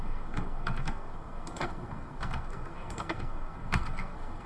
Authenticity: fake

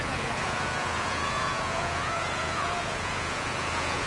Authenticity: fake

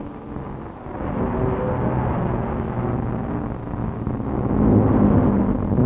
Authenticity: real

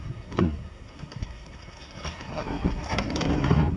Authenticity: fake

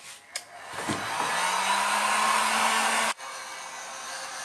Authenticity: real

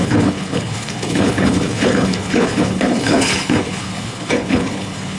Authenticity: fake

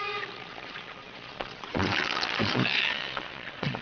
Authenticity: fake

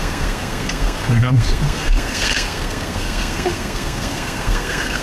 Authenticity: fake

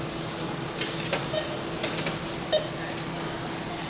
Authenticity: real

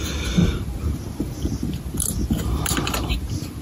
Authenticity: real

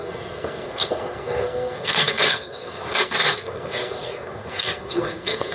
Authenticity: fake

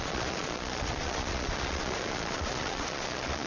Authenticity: fake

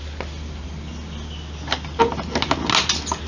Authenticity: real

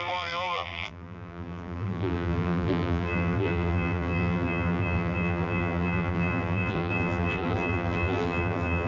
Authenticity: fake